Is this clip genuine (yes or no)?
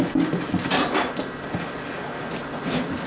yes